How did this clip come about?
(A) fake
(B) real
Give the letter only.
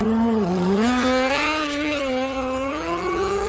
A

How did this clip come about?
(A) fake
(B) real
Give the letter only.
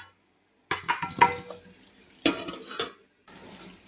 B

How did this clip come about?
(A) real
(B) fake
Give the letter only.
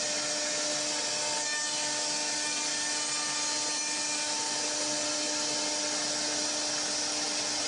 A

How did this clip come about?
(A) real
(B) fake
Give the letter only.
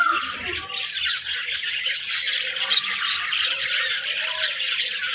A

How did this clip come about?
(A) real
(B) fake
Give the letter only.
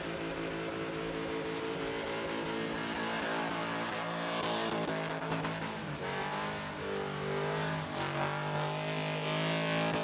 A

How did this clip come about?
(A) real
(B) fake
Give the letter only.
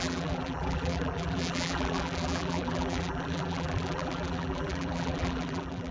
B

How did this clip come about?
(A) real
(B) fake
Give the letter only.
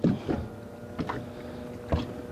A